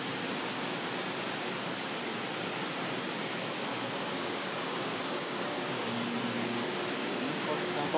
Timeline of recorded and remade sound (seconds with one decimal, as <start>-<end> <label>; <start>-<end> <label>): 0.0-3.7 recorded; 3.7-5.9 remade; 5.9-7.0 recorded; 7.0-8.0 remade